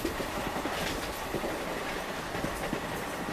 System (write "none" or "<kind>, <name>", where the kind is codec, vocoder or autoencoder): none